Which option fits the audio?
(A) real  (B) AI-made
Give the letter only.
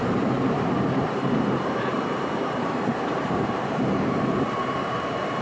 B